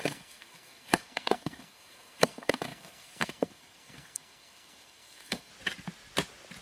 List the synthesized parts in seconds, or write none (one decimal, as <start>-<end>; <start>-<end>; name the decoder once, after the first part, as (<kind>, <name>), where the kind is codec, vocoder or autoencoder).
0.0-5.5 (codec, SNAC)